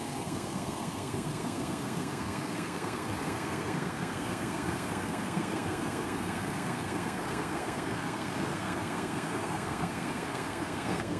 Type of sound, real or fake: fake